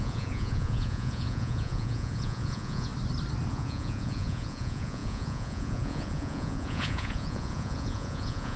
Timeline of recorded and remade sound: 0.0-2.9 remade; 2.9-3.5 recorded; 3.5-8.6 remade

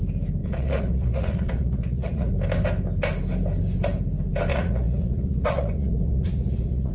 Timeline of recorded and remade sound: 0.0-0.4 recorded; 0.4-2.3 remade; 2.3-4.5 recorded; 4.5-6.9 remade

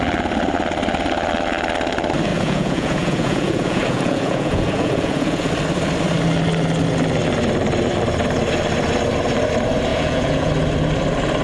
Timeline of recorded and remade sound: 0.0-2.3 recorded; 2.3-5.5 remade; 5.5-9.9 recorded; 9.9-10.5 remade; 10.5-11.4 recorded

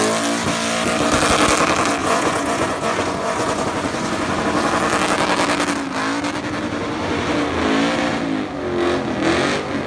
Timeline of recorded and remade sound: 0.0-2.0 recorded; 2.0-4.4 remade; 4.4-9.9 recorded

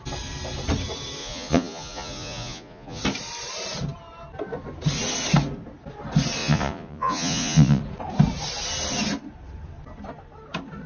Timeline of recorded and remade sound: 0.0-1.2 recorded; 1.2-3.0 remade; 3.0-6.4 recorded; 6.4-7.8 remade; 7.8-10.9 recorded

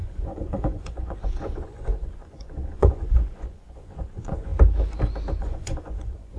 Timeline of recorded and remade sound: 0.0-4.5 remade; 4.5-5.4 recorded; 5.4-6.4 remade

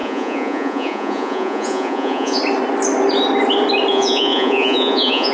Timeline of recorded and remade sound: 0.0-2.4 remade; 2.4-3.9 recorded; 3.9-5.3 remade